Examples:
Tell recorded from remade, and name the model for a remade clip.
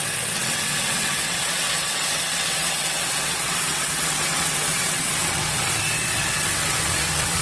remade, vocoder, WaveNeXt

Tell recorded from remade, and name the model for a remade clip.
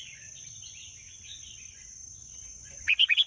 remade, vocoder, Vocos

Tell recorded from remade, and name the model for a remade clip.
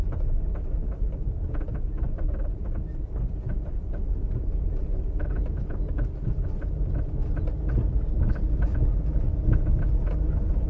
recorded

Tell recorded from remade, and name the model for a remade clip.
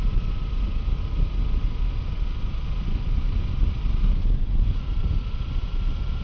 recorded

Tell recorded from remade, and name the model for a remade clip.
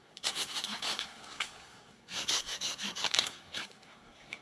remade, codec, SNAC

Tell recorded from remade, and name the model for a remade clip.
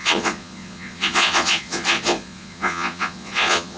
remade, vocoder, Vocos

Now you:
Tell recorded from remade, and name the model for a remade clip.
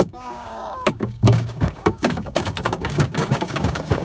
remade, codec, DAC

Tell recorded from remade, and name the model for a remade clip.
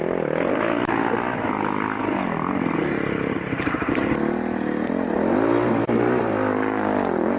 recorded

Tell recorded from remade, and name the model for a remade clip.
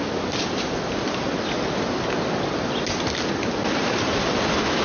recorded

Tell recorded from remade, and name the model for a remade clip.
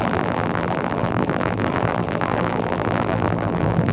remade, vocoder, BigVGAN v2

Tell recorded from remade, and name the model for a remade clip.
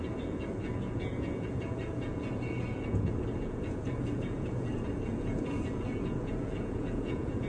remade, vocoder, Vocos